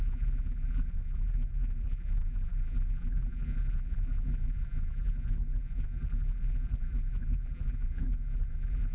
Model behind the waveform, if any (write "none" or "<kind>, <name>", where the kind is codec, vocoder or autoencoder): vocoder, BigVGAN v2